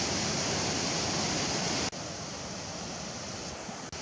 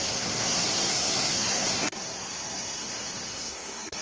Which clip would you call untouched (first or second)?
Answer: first